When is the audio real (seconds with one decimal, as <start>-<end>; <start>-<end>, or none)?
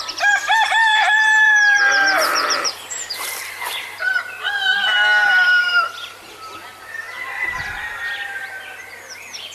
4.7-5.3